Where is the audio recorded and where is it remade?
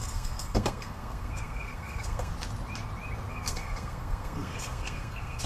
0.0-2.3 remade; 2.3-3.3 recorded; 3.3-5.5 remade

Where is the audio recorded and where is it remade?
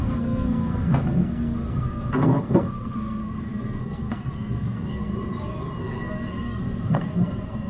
0.0-5.1 remade; 5.1-5.8 recorded; 5.8-7.7 remade